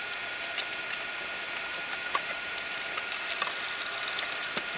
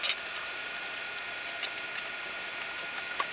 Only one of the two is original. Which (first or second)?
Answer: second